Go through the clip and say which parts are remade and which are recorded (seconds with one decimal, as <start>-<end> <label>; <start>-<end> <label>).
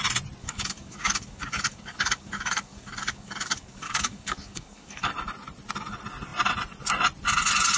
0.0-0.4 recorded; 0.4-5.1 remade; 5.1-7.8 recorded